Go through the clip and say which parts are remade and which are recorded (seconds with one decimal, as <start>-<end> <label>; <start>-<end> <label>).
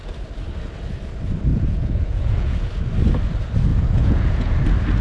0.0-1.5 recorded; 1.5-2.7 remade; 2.7-3.7 recorded; 3.7-4.6 remade; 4.6-5.0 recorded